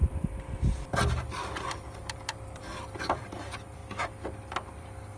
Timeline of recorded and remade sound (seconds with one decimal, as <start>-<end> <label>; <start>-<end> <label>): 0.0-3.8 remade; 3.8-4.8 recorded; 4.8-5.2 remade

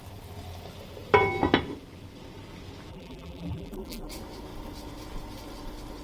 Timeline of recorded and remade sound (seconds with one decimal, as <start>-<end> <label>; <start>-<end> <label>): 0.0-2.9 recorded; 2.9-4.1 remade; 4.1-6.0 recorded